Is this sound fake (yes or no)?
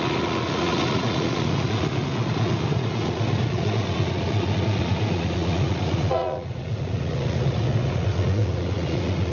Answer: yes